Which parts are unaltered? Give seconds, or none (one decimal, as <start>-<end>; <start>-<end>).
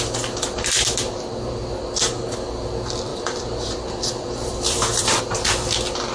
0.0-3.1; 5.2-6.1